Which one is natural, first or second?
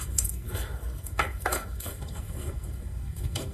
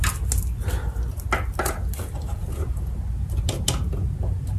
second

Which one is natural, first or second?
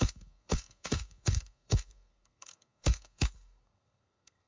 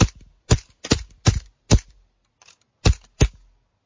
second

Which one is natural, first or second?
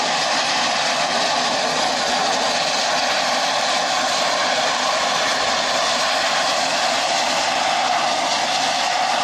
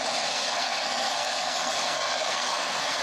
first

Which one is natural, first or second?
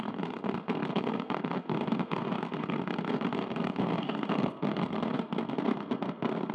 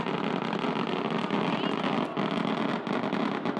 second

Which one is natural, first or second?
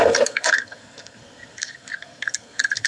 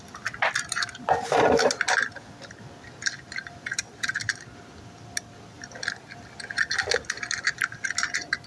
second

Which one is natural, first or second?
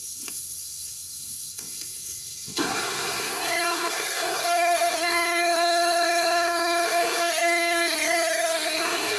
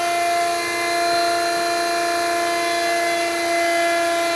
second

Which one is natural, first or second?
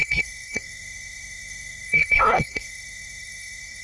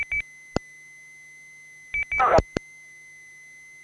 second